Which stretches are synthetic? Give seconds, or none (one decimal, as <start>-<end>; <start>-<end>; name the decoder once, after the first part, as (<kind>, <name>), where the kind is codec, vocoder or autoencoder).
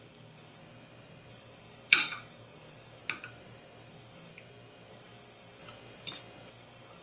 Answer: 0.0-0.6 (codec, DAC); 1.3-3.0; 3.9-4.3; 4.9-5.6; 6.5-7.0